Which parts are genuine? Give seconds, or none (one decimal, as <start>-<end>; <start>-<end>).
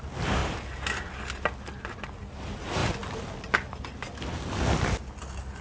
0.0-5.6